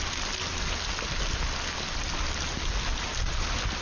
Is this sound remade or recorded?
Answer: recorded